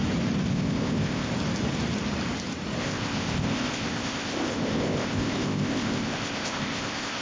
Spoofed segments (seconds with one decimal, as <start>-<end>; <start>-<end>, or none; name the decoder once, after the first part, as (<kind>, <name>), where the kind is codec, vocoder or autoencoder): 0.5-1.3 (codec, ZipCodec); 2.8-7.2